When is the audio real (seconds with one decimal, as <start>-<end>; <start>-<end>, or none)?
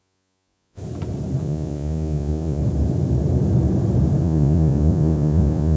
0.8-1.4; 2.6-4.2